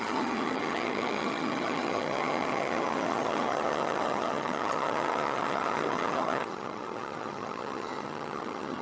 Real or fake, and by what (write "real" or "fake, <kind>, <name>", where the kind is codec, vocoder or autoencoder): fake, vocoder, HiFi-GAN